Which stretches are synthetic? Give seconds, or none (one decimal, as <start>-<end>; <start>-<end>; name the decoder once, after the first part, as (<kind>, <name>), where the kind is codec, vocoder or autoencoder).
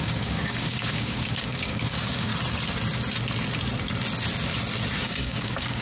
0.0-2.3 (codec, DAC); 5.0-5.8